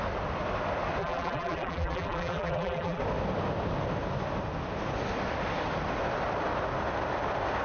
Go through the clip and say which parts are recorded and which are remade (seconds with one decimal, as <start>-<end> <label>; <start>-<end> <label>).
0.0-1.0 recorded; 1.0-3.0 remade; 3.0-7.6 recorded